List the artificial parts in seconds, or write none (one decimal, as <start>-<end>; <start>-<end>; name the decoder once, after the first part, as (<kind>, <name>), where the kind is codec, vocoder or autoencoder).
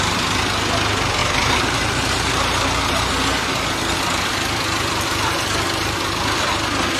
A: 1.2-3.1 (vocoder, BigVGAN v2)